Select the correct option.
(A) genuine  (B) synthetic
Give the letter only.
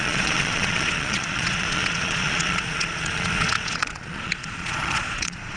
B